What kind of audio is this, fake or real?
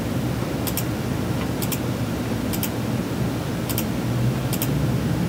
real